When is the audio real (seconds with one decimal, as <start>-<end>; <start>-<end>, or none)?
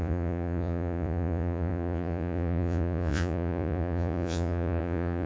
none